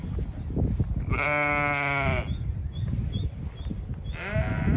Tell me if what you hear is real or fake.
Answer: real